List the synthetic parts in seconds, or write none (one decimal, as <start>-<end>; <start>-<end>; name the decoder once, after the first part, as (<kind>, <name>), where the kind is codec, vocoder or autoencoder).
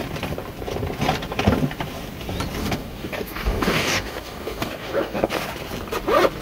2.6-5.3 (codec, DAC)